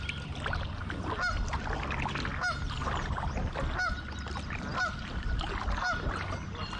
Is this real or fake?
real